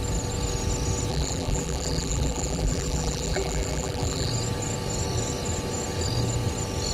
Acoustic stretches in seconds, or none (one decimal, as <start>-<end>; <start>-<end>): 0.0-1.1; 4.3-6.9